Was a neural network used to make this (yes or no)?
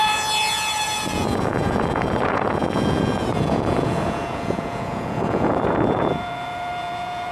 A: yes